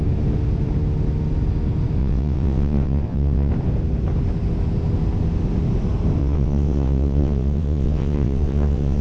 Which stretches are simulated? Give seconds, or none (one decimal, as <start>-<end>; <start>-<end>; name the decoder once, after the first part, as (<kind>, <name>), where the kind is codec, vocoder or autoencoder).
2.0-3.5 (vocoder, WaveNeXt); 6.2-9.0